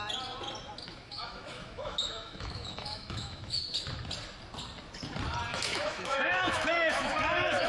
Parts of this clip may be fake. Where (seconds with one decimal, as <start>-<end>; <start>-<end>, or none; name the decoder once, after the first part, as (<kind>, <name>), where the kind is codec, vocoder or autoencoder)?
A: 0.9-3.6 (autoencoder, DAC-VAE); 5.5-7.7